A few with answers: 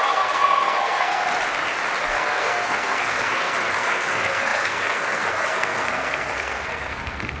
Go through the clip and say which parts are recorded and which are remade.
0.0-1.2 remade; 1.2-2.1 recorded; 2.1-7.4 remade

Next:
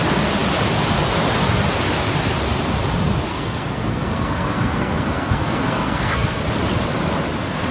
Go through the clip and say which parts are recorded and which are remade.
0.0-3.3 recorded; 3.3-6.4 remade; 6.4-7.7 recorded